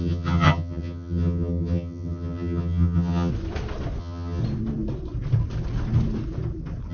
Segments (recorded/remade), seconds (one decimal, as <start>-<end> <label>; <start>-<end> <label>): 0.0-3.3 remade; 3.3-4.0 recorded; 4.0-4.4 remade; 4.4-6.9 recorded